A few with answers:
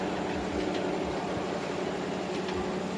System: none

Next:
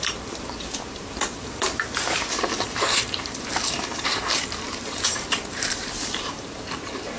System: vocoder, BigVGAN v2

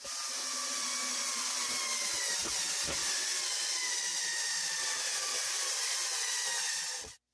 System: none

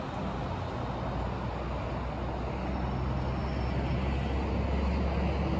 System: none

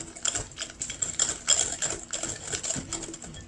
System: none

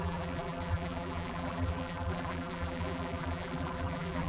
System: vocoder, BigVGAN v2